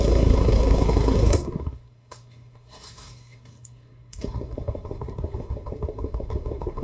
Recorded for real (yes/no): no